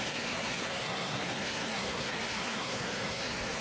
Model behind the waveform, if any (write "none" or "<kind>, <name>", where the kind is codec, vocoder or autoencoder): codec, SNAC